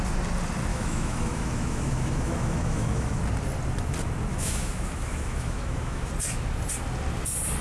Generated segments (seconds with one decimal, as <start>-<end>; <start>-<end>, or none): 0.7-3.2; 4.3-6.1